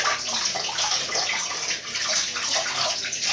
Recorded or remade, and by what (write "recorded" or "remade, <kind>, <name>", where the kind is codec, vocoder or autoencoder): recorded